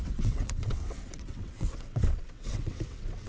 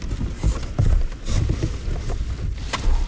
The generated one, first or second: first